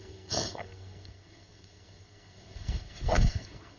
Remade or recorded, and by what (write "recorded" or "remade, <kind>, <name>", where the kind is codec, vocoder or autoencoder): remade, codec, SNAC